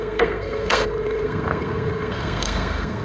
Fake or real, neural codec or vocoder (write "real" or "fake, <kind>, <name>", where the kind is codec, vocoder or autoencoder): fake, codec, SNAC